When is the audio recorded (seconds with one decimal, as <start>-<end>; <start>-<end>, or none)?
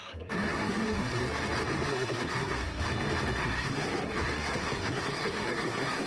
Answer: 1.2-1.9; 2.8-3.4